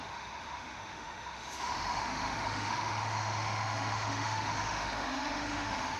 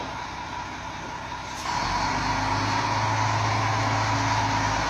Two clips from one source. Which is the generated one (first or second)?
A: first